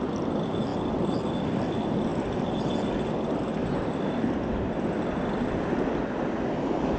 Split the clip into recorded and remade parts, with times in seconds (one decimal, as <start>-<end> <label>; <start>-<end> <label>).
0.0-0.7 recorded; 0.7-1.3 remade; 1.3-2.1 recorded; 2.1-2.7 remade; 2.7-7.0 recorded